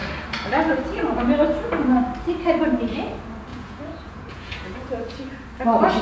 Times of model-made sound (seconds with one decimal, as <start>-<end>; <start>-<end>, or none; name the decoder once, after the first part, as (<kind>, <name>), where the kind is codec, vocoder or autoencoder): 3.5-5.3 (vocoder, Vocos)